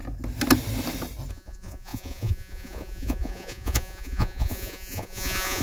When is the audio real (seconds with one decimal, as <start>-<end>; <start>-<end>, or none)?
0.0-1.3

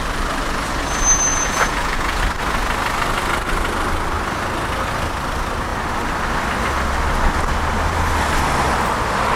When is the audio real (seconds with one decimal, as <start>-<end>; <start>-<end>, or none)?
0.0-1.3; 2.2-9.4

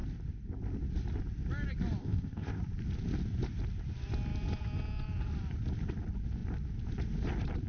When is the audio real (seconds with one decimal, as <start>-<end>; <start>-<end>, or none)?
0.0-2.0; 2.6-7.7

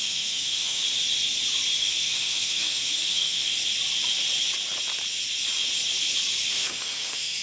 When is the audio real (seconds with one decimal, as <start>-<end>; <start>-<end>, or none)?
0.8-1.8; 3.5-6.5

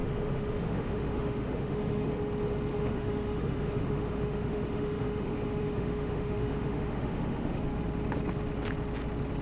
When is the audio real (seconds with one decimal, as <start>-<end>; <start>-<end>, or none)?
2.1-2.7; 7.6-9.4

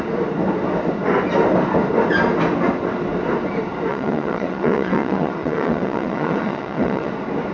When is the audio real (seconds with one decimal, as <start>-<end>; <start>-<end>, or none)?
0.0-3.9; 7.1-7.5

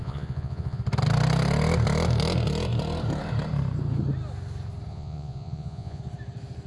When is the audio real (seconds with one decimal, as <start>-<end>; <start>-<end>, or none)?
0.8-4.9; 6.0-6.7